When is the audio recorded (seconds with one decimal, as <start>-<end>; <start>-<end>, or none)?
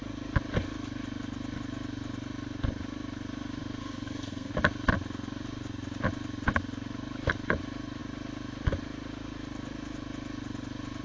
0.0-3.8; 4.5-11.0